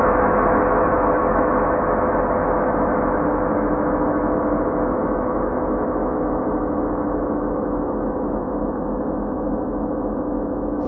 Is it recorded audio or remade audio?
remade